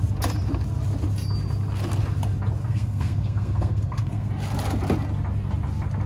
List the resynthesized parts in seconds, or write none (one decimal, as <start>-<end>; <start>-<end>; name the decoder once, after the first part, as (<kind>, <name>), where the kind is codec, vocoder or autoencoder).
2.6-4.3 (codec, SNAC)